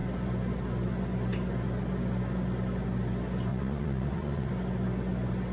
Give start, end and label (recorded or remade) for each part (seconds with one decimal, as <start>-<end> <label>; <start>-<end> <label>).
0.0-3.5 recorded; 3.5-4.5 remade; 4.5-5.5 recorded